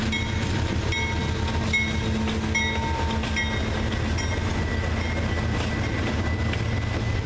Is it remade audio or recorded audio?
recorded